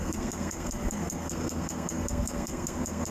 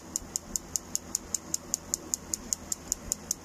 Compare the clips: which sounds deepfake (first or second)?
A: first